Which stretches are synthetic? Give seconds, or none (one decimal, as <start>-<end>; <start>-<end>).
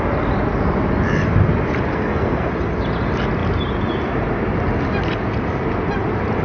1.9-2.5